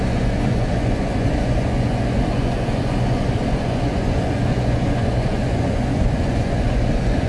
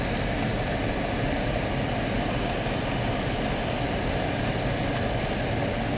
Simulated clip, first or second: first